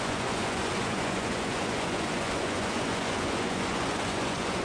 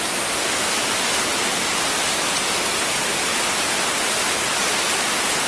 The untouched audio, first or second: second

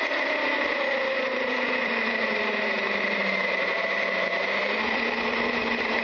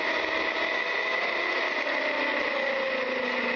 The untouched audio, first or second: second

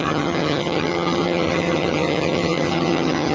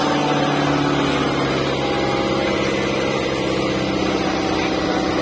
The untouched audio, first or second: second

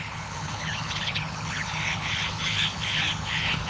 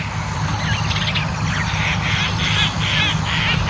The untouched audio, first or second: second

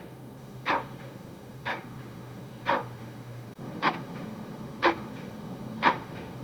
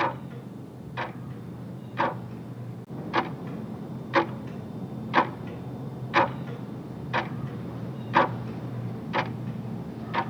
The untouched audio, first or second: second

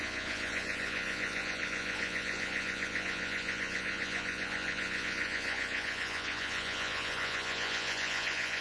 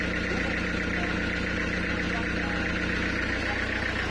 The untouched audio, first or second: second